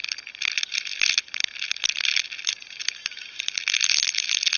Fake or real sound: real